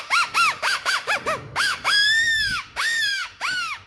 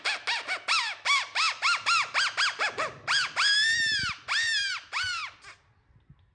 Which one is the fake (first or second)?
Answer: first